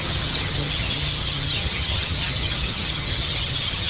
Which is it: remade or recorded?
remade